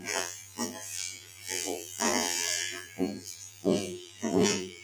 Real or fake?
fake